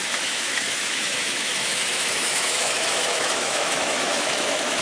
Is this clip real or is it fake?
fake